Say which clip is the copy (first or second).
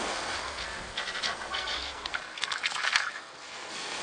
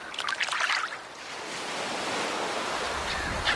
first